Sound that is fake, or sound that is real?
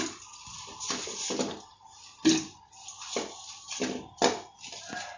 real